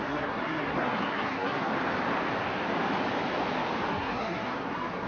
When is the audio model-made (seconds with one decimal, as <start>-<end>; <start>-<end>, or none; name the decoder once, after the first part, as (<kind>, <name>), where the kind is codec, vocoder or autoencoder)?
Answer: 0.0-1.7 (codec, SNAC); 3.9-5.1

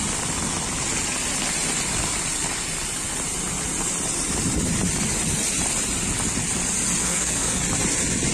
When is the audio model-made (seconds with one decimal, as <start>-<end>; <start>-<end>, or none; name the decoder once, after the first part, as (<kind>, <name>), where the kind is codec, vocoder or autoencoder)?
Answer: 7.0-7.6 (codec, SNAC)

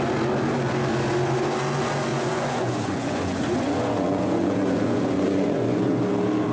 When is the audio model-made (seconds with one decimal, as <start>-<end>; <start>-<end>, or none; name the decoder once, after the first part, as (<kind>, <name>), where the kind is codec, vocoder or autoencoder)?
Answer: 2.1-6.0 (vocoder, Vocos)